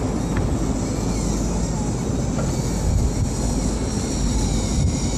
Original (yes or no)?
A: yes